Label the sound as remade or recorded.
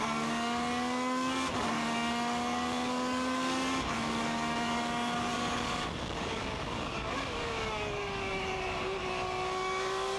remade